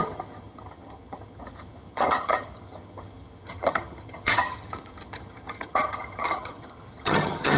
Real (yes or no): no